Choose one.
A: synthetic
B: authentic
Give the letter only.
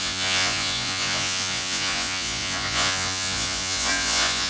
A